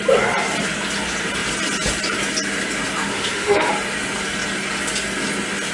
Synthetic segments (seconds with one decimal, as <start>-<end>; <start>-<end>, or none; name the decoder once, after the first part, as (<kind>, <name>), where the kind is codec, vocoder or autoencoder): 3.1-3.7 (autoencoder, DAC-VAE)